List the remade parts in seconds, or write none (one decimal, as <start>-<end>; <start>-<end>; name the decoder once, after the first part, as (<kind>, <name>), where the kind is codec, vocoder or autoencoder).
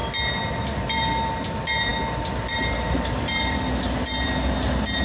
none